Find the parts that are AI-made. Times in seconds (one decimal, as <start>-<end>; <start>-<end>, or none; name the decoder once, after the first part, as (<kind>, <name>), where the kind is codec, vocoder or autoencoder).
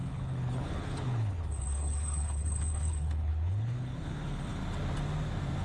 0.0-4.6 (codec, HILCodec)